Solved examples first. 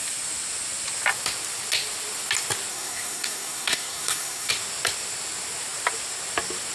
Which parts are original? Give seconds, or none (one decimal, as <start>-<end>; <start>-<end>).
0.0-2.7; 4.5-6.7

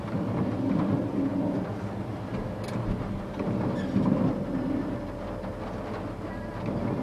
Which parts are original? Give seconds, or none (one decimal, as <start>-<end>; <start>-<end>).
0.0-7.0

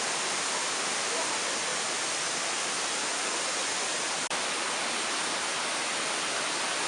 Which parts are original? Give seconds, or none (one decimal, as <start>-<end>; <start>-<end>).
0.0-6.9

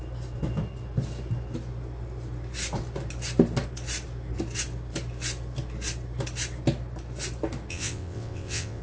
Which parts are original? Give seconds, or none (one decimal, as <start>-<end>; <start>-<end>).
0.0-7.7

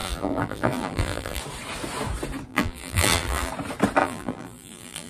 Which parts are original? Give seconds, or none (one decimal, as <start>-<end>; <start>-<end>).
1.4-2.5; 3.5-4.0